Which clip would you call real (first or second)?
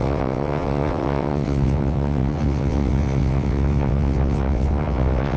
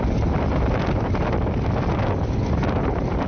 second